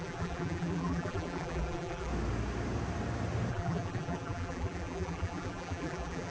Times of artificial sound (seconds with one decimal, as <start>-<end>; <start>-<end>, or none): 0.0-2.1; 3.5-6.3